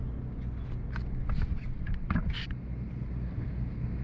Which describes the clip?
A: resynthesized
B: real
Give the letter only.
B